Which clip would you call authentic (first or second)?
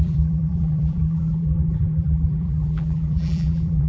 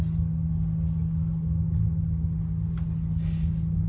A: second